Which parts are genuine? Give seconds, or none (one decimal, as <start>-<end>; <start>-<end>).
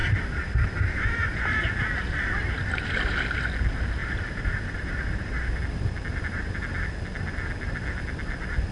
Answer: 2.4-4.0; 5.6-8.7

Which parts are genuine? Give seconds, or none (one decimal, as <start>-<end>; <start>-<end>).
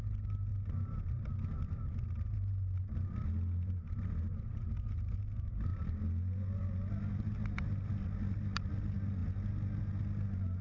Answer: 0.0-10.6